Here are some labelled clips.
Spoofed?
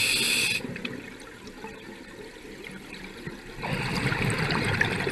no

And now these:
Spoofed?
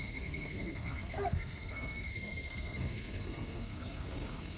yes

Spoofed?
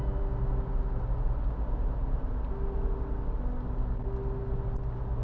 no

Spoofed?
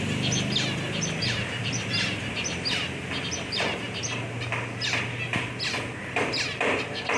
no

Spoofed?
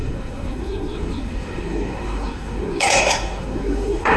yes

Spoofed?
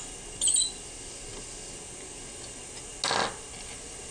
no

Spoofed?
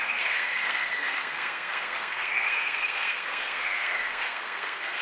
yes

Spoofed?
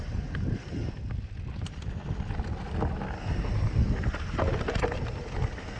no